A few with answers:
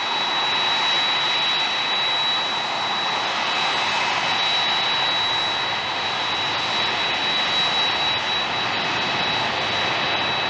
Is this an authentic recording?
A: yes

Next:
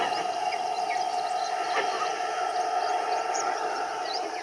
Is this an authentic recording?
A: yes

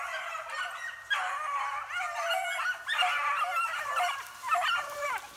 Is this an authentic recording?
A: no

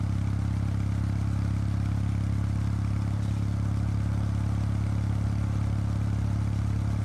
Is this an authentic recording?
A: yes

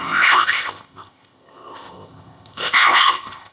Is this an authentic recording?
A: no